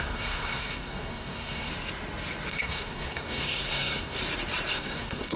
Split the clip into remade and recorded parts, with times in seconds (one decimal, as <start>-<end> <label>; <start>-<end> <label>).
0.0-1.7 remade; 1.7-2.5 recorded; 2.5-4.2 remade; 4.2-4.7 recorded; 4.7-5.4 remade